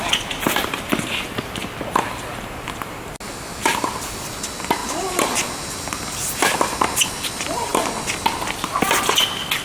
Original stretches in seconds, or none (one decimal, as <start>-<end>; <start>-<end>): 0.0-9.6